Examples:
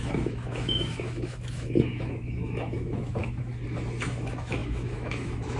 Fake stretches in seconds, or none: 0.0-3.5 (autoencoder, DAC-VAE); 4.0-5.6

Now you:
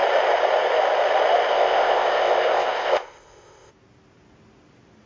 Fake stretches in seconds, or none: 1.5-3.7 (codec, ZipCodec)

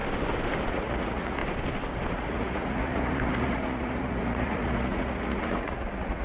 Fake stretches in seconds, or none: 0.7-1.4 (vocoder, Vocos); 2.1-6.2

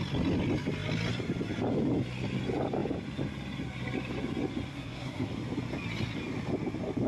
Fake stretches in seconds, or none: 4.7-5.3 (codec, SNAC)

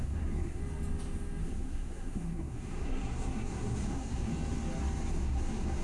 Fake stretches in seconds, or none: 0.0-0.6 (codec, SNAC); 1.4-4.3; 5.1-5.8

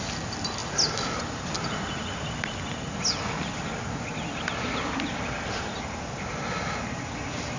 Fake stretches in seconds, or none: none